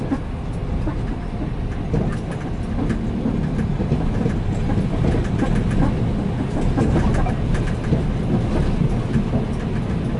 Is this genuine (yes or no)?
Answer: yes